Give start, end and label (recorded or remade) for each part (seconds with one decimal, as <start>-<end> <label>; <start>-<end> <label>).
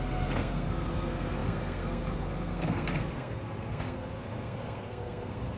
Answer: 0.0-5.6 remade